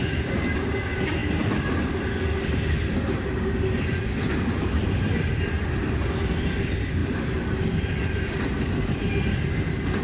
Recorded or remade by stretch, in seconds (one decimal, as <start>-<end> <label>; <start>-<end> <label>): 0.0-10.0 recorded